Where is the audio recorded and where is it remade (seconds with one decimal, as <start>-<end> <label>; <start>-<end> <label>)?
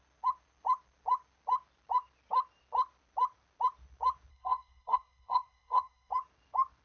0.0-4.3 recorded; 4.3-6.1 remade; 6.1-6.8 recorded